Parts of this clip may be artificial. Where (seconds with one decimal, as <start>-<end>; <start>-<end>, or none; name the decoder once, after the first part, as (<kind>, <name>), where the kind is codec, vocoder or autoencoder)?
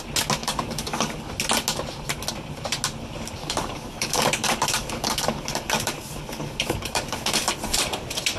0.4-1.3 (codec, DAC); 3.4-7.5